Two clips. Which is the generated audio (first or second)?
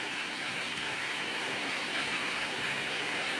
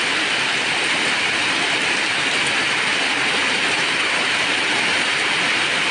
first